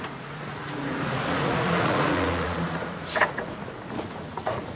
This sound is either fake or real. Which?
fake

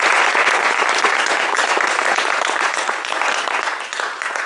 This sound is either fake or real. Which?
fake